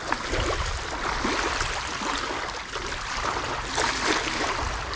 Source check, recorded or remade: recorded